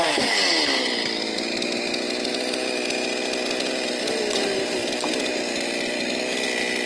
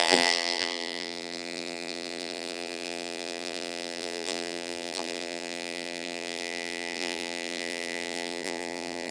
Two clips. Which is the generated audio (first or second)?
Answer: second